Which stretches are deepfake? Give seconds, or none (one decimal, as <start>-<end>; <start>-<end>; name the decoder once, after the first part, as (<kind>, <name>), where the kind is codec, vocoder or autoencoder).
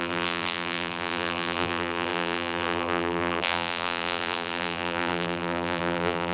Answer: 0.0-6.3 (vocoder, BigVGAN v2)